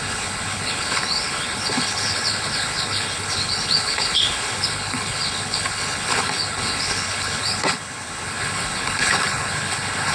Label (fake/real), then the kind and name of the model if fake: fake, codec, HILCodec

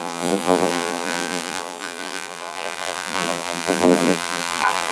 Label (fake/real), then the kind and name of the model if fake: fake, vocoder, BigVGAN v2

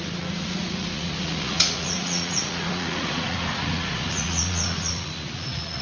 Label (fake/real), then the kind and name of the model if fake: fake, vocoder, Vocos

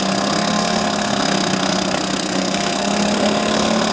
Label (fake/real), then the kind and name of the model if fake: fake, codec, SNAC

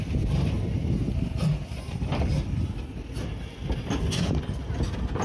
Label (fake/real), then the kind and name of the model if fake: real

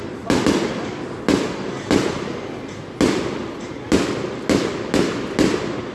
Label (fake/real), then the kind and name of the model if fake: real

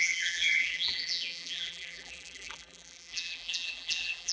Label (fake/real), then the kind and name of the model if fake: fake, vocoder, BigVGAN v2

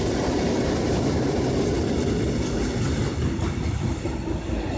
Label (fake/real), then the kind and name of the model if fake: real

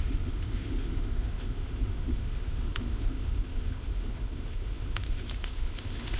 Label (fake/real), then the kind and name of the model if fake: fake, autoencoder, DAC-VAE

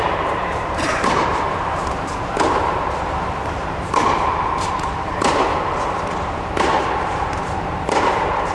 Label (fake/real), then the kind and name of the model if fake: fake, vocoder, BigVGAN v2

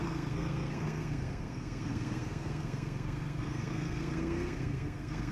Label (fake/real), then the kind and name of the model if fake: fake, codec, SNAC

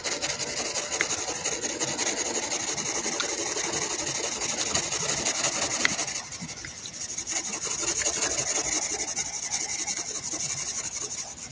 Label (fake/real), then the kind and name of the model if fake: real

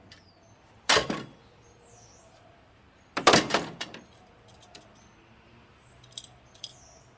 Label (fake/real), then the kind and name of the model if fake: fake, vocoder, BigVGAN v2